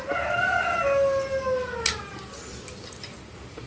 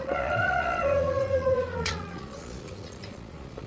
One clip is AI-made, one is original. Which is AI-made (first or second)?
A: second